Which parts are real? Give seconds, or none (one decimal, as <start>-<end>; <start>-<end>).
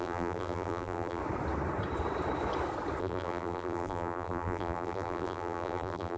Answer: 1.2-3.0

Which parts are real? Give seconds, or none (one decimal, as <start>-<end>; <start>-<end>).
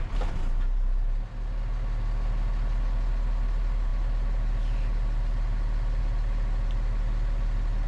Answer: 0.0-7.9